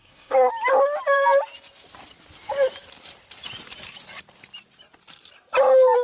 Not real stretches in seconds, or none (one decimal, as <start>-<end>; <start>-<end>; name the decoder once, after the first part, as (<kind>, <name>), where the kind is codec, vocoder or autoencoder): 0.0-0.5 (codec, SNAC)